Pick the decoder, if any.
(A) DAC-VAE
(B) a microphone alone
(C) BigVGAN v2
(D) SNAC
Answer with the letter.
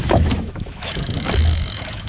A